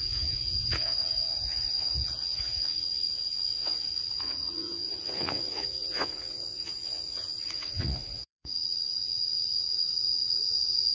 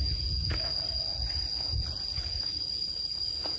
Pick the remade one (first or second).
first